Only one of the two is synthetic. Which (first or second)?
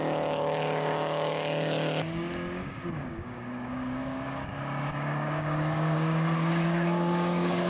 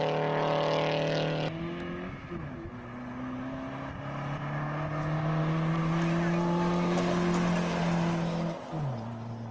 first